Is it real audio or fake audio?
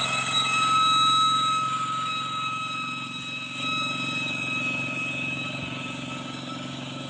fake